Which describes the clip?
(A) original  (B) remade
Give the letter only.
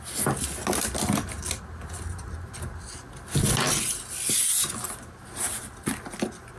A